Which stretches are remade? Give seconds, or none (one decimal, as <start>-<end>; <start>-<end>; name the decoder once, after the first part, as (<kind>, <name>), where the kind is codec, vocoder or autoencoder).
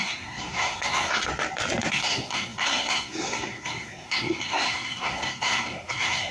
0.0-1.3 (codec, SNAC); 1.9-6.3